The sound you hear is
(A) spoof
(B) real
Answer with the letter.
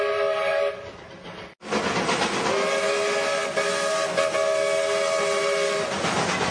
B